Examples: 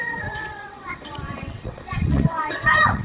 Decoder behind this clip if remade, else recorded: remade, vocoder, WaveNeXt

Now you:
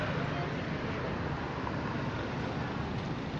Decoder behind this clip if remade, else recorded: recorded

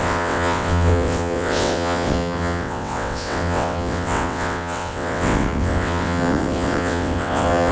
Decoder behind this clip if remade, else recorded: remade, vocoder, WaveNeXt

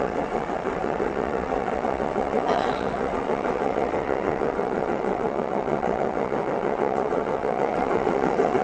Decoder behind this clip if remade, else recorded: remade, vocoder, WaveNeXt